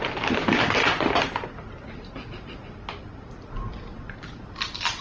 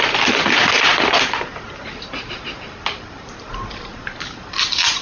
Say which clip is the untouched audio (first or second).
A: first